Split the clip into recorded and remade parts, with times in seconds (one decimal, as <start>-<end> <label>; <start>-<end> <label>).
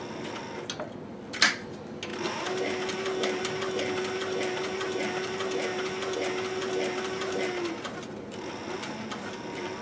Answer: 0.0-9.8 recorded